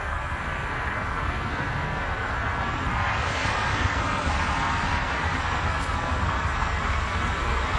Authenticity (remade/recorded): remade